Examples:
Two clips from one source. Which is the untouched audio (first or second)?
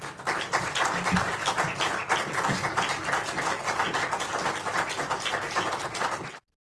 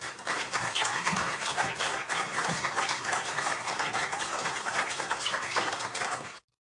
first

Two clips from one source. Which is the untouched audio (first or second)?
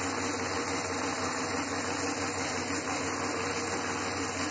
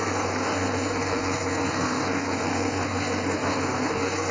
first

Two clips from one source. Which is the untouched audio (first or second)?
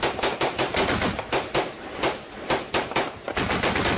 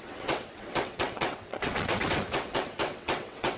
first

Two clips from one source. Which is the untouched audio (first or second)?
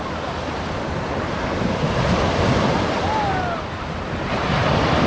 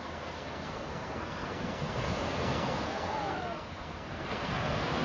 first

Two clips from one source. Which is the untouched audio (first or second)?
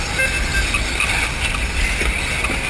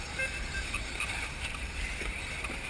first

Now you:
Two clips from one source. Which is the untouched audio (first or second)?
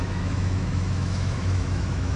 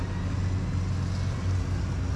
second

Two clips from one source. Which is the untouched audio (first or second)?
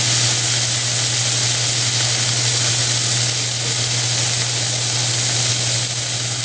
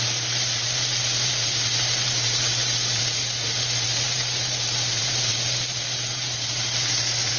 first